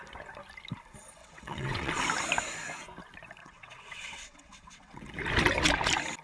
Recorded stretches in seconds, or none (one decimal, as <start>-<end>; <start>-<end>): 0.0-1.2; 1.9-3.4; 5.1-6.2